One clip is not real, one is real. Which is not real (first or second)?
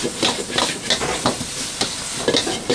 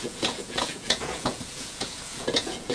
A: second